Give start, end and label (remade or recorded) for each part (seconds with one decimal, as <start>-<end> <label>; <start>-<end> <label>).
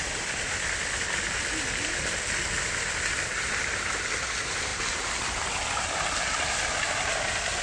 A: 0.0-7.6 recorded